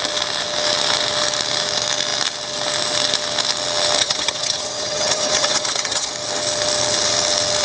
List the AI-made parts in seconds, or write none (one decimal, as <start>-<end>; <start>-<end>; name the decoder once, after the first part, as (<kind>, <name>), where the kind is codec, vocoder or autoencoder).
4.0-6.1 (vocoder, HiFi-GAN)